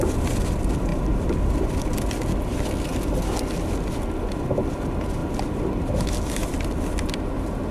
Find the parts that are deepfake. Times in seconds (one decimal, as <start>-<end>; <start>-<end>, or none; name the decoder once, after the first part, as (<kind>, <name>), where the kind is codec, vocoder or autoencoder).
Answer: none